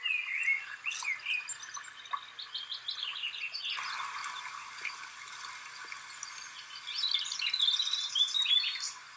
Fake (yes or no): no